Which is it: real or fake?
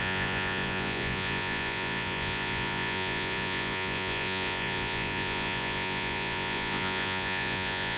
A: fake